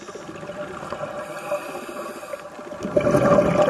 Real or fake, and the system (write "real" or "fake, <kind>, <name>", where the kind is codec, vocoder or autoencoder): real